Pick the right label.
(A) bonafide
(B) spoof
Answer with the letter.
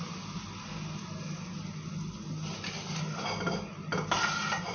A